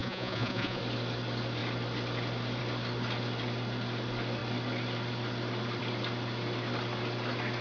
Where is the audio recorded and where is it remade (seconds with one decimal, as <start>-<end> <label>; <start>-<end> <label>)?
0.0-0.8 remade; 0.8-7.6 recorded